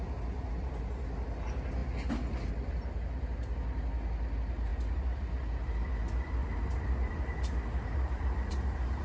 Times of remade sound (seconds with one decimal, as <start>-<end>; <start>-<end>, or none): 6.4-9.0